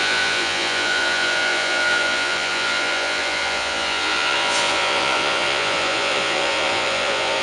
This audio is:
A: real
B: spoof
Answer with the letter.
B